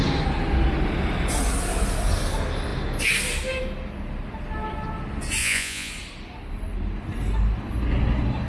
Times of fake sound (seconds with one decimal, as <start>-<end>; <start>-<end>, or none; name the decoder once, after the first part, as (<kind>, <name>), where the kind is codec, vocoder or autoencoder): 5.4-5.9 (vocoder, Vocos)